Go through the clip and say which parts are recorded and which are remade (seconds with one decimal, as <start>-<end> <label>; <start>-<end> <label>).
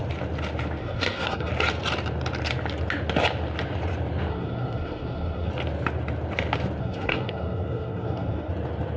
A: 0.0-0.8 recorded; 0.8-1.5 remade; 1.5-4.3 recorded; 4.3-5.5 remade; 5.5-6.8 recorded; 6.8-8.5 remade; 8.5-9.0 recorded